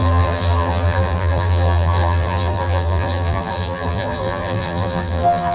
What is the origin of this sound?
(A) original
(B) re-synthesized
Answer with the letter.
B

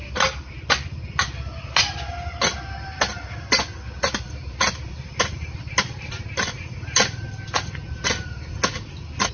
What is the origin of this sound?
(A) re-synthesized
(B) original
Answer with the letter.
B